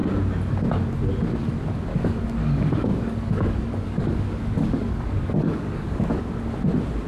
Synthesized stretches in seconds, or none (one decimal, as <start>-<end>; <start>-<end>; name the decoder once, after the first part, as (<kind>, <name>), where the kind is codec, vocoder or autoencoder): 1.9-6.2 (codec, DAC)